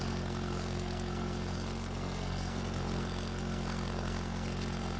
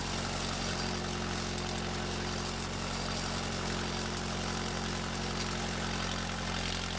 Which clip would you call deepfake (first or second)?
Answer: first